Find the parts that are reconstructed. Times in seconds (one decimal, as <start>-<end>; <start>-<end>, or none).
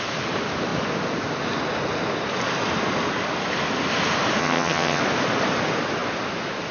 4.4-5.0